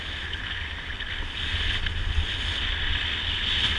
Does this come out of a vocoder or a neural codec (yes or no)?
no